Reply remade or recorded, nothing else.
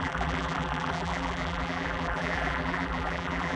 remade